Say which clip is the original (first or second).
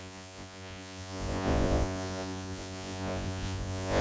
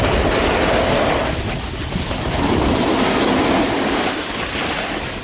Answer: second